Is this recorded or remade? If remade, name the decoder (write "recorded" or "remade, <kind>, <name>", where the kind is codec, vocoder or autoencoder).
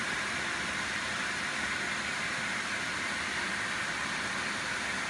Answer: recorded